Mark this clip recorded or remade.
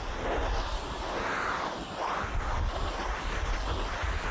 recorded